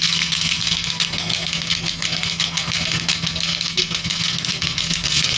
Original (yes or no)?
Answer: no